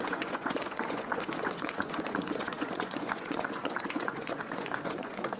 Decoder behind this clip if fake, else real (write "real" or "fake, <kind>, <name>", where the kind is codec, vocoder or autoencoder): fake, vocoder, Vocos